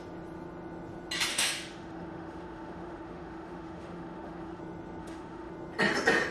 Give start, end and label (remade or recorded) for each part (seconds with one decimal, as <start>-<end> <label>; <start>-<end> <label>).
0.0-1.3 recorded; 1.3-4.6 remade; 4.6-5.0 recorded; 5.0-5.5 remade; 5.5-6.3 recorded